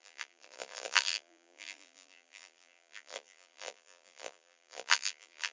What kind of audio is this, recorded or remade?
remade